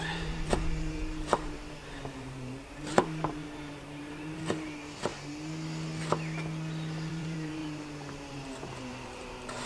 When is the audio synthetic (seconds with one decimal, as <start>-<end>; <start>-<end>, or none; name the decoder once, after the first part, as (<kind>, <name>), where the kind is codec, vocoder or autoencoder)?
0.0-5.1 (vocoder, BigVGAN v2); 7.1-9.7